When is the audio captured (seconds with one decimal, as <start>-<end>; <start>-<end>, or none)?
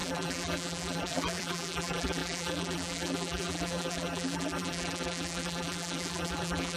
none